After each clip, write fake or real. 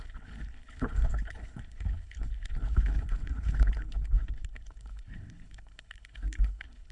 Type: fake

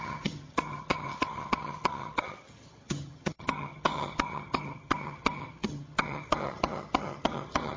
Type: fake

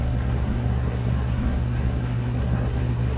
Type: fake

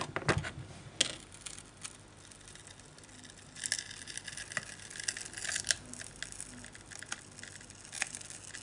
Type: real